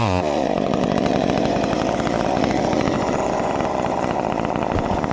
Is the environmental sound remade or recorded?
remade